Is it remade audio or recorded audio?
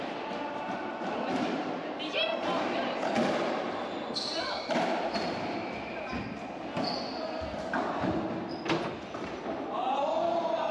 recorded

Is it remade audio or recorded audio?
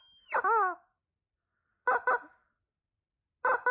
recorded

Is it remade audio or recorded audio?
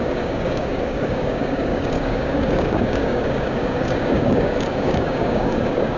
remade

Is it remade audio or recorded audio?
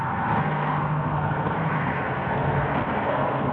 remade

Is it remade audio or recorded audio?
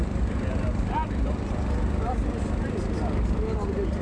recorded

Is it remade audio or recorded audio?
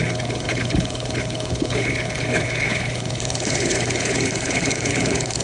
remade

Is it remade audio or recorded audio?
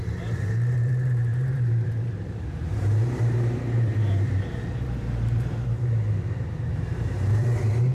remade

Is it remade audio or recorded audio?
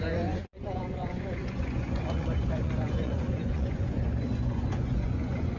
remade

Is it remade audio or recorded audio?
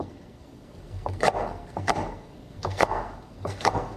remade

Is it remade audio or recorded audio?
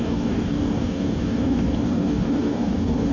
remade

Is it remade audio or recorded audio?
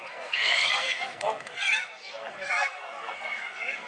remade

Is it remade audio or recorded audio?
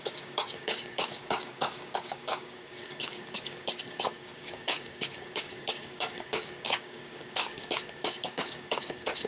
remade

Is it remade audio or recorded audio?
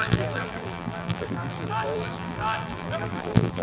remade